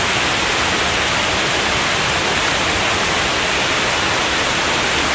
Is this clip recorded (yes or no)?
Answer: yes